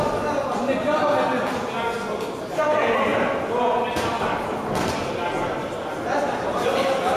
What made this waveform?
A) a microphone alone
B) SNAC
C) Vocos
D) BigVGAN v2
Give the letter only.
A